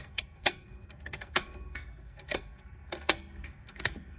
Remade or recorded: remade